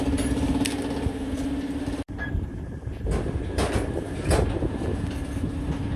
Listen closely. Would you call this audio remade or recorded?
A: recorded